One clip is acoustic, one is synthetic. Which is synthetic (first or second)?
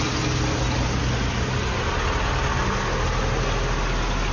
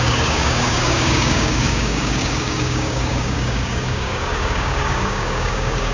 second